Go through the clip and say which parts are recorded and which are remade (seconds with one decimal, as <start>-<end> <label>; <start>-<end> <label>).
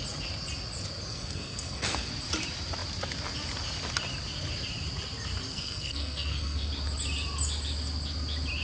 0.0-1.1 recorded; 1.1-2.1 remade; 2.1-5.5 recorded; 5.5-6.7 remade; 6.7-8.6 recorded